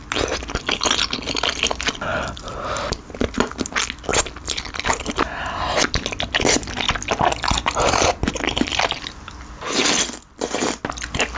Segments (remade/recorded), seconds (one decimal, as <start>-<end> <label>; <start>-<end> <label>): 0.0-2.1 recorded; 2.1-2.9 remade; 2.9-11.4 recorded